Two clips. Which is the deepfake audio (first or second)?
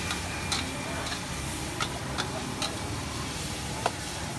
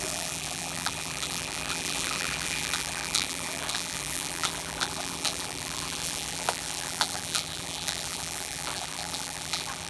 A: second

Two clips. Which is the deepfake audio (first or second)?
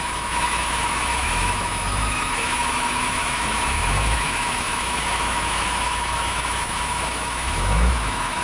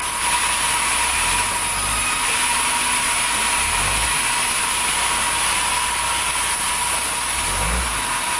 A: first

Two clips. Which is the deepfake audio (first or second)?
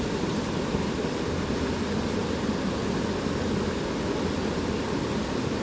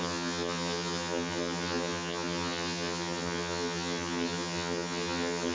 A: second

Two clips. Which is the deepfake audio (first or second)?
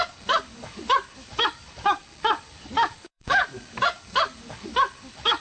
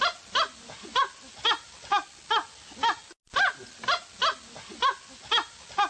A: first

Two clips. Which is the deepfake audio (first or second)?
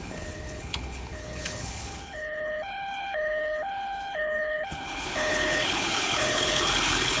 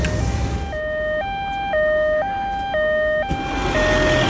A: first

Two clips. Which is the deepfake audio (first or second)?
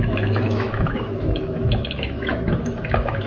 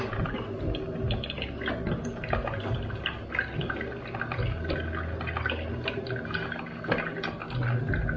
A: first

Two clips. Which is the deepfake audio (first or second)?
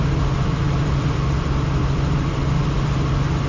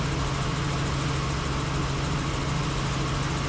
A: first